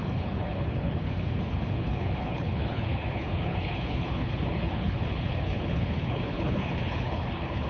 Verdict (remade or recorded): remade